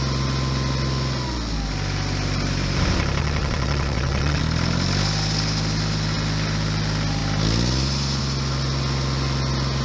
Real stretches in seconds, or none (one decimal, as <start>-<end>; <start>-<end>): 0.0-3.2; 4.4-9.8